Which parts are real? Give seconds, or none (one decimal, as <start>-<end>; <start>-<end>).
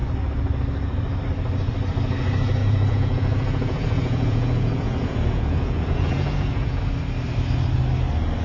0.0-2.6; 6.8-8.4